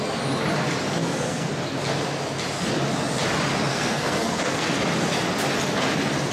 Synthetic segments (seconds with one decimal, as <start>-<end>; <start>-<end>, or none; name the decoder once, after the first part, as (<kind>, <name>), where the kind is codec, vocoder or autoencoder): 1.0-1.5 (codec, SNAC); 3.7-4.7